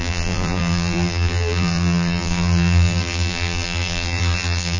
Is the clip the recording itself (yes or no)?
no